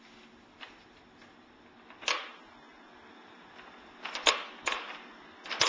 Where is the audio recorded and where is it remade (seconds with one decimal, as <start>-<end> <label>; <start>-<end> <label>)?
0.0-5.7 recorded